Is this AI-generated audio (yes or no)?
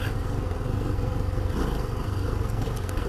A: yes